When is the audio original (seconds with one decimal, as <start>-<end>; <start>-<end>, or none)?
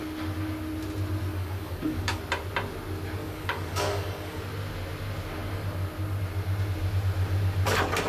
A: 0.0-1.3; 2.2-3.2; 4.4-8.1